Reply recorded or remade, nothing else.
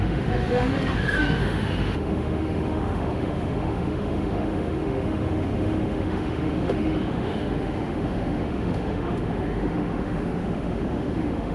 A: remade